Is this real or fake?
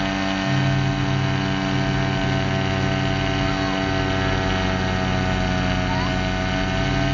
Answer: real